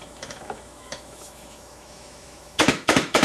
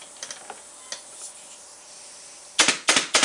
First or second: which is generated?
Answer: first